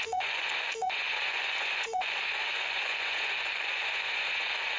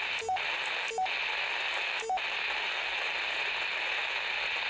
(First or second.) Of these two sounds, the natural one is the second